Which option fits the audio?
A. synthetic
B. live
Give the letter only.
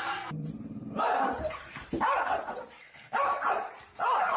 A